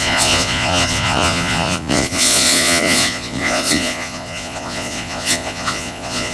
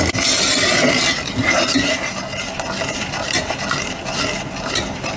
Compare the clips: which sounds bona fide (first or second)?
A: second